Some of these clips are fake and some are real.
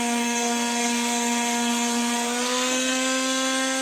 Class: fake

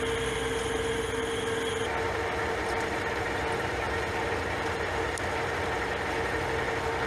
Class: real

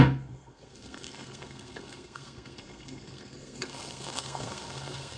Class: fake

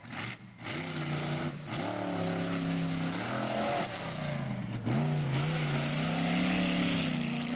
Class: real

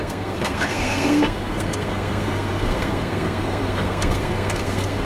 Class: fake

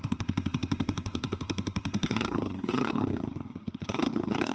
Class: fake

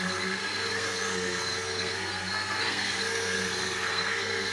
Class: fake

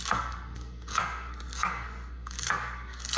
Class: fake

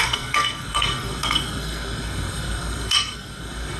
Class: fake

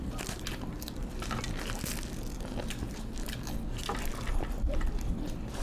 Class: real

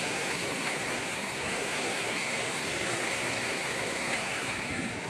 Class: fake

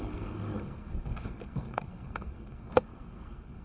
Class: fake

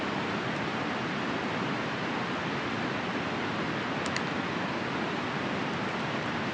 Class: real